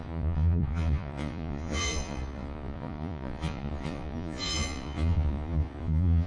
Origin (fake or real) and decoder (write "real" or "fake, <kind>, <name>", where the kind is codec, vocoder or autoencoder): fake, vocoder, Vocos